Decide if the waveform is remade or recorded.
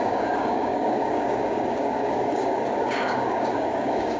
remade